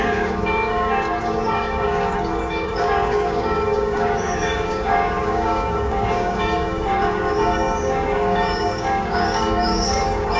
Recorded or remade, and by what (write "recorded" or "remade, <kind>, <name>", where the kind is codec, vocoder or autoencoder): remade, codec, DAC